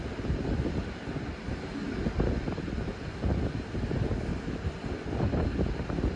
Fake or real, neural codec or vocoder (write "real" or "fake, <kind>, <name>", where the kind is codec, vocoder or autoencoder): real